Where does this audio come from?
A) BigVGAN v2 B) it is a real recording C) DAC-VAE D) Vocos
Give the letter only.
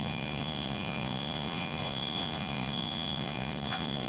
D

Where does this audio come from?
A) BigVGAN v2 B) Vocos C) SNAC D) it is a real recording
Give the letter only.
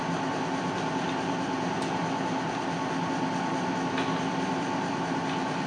D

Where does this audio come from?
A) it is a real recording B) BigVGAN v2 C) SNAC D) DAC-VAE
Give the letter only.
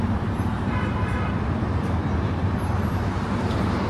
B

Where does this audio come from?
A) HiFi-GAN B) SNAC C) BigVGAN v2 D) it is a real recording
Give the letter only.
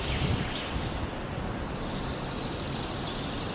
D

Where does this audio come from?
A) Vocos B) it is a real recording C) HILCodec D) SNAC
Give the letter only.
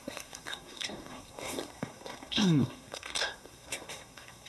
D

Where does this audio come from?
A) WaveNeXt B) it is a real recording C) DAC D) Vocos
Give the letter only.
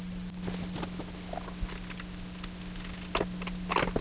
B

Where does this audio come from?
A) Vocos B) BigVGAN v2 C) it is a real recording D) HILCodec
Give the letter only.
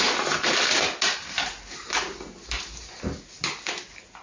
C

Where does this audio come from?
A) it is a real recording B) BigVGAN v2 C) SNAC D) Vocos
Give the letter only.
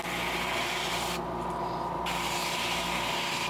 A